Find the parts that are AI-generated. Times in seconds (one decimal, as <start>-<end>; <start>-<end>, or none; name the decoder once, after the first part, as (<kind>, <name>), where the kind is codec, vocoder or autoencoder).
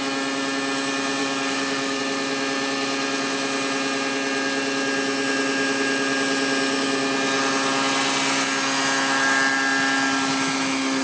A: 1.2-2.0 (codec, DAC)